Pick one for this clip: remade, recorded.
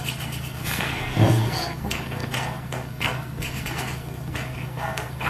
remade